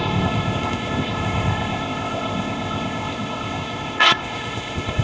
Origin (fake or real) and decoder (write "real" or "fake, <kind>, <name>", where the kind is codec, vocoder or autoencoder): fake, codec, ZipCodec